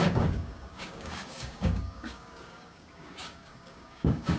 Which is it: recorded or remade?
remade